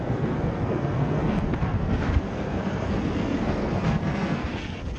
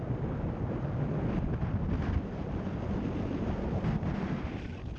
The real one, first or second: second